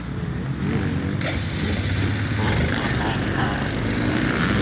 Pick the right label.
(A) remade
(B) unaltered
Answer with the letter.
B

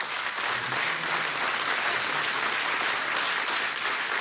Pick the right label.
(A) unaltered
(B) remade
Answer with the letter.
A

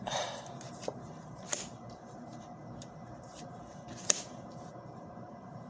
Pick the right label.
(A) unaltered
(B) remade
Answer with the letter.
B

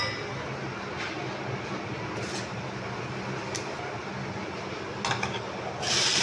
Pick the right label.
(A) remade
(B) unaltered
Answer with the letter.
B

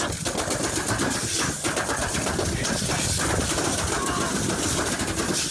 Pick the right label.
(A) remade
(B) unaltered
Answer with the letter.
B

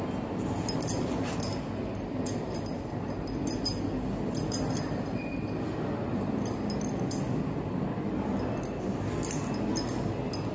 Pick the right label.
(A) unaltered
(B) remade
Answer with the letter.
A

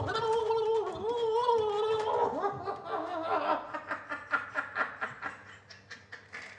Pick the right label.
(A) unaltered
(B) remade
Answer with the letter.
A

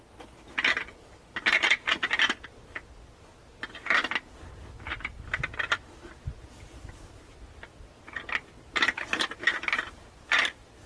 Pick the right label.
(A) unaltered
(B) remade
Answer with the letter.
A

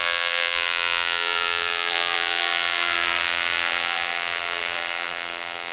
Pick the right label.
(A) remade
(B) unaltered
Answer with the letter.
A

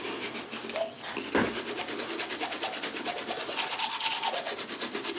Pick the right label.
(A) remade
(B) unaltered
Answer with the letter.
A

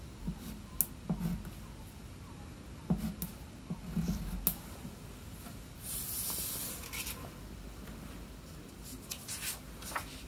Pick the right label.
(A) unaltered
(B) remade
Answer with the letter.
A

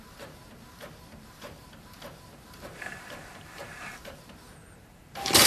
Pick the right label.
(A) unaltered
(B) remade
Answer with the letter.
B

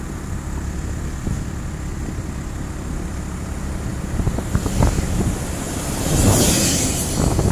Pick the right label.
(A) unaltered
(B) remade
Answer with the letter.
B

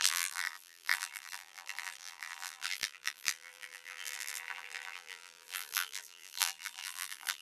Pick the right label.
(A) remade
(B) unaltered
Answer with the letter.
A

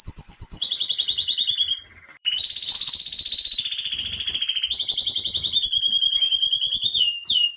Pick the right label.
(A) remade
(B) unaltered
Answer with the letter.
A